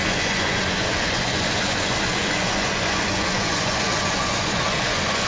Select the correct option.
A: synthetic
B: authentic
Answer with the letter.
A